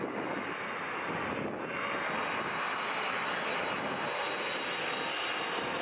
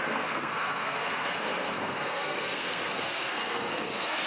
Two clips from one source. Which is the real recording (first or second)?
first